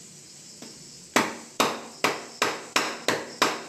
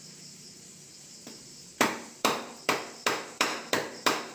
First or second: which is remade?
second